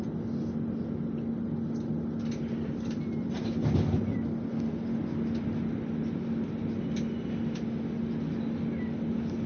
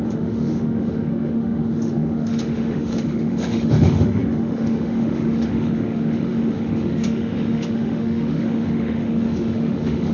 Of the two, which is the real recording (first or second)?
first